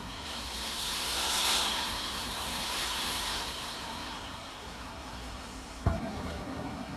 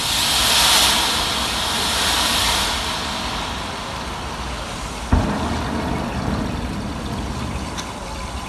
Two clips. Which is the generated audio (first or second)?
first